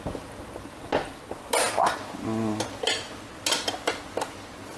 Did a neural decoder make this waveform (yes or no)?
no